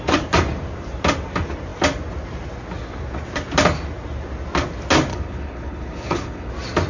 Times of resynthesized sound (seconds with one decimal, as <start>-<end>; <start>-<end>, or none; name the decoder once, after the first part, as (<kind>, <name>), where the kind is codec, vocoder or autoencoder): 5.1-6.5 (codec, HILCodec)